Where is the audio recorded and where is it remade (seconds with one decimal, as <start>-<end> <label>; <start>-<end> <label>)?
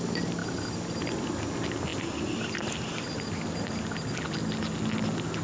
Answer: 0.0-5.4 recorded